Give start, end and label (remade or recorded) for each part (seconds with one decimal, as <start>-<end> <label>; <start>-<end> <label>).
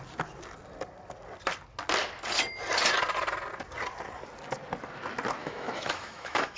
0.0-5.4 recorded; 5.4-6.6 remade